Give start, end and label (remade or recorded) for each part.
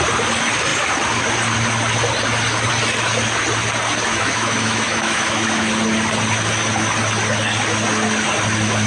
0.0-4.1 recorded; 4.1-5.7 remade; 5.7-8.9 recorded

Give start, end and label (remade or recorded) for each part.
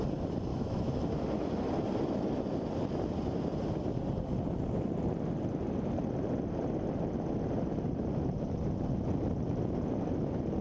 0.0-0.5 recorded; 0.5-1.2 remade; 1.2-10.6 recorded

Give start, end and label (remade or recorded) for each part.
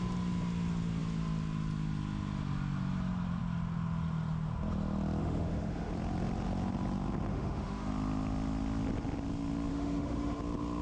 0.0-5.2 recorded; 5.2-5.9 remade; 5.9-7.3 recorded; 7.3-7.9 remade; 7.9-9.7 recorded; 9.7-10.4 remade; 10.4-10.8 recorded